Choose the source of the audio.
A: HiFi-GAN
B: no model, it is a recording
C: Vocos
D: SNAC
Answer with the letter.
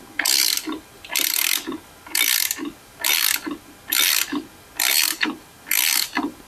B